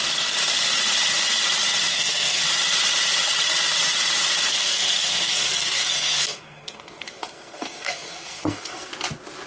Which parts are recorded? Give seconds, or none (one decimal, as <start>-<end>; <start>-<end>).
0.0-1.9; 2.4-4.5; 8.9-9.5

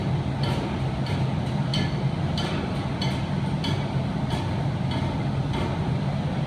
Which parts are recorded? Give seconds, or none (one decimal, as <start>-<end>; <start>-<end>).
0.0-6.5

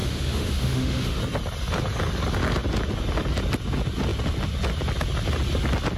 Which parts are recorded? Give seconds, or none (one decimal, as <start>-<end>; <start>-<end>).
1.2-6.0